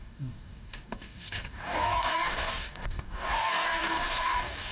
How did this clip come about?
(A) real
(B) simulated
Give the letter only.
B